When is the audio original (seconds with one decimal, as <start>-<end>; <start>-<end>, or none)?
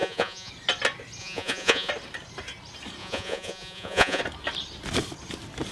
0.5-1.2; 1.9-3.0; 4.2-5.7